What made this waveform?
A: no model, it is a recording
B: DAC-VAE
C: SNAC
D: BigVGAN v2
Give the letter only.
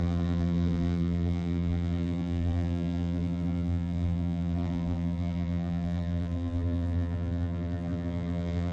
D